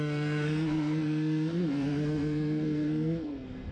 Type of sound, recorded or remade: remade